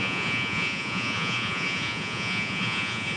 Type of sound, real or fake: fake